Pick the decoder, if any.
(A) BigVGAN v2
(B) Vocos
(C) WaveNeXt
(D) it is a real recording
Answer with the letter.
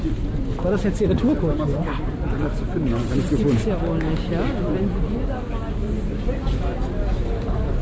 D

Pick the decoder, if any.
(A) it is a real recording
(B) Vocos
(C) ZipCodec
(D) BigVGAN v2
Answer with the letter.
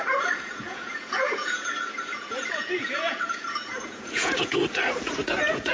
B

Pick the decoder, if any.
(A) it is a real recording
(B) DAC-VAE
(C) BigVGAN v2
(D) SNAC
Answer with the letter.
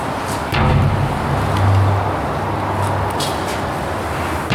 A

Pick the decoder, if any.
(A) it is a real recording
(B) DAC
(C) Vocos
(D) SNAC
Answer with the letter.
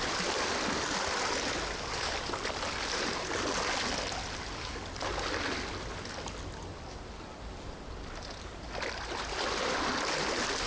A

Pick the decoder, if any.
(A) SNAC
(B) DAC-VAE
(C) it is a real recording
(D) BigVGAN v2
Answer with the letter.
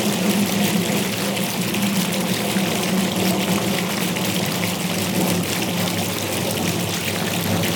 C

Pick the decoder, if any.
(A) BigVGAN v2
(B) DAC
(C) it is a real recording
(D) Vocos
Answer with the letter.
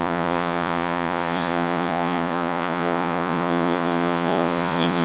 D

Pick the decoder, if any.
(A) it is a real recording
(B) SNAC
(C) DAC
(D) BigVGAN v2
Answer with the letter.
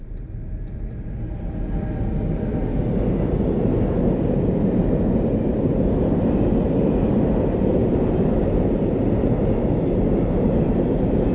A